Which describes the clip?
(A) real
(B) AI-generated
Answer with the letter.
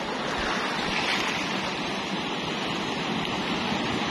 A